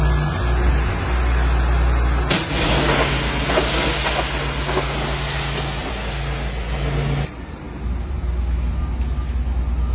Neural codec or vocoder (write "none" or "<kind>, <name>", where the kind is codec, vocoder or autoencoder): none